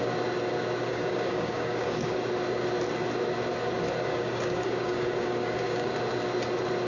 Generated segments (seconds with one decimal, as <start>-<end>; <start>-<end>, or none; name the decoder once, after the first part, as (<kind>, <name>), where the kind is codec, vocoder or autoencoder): 0.9-2.2 (codec, DAC); 4.1-5.9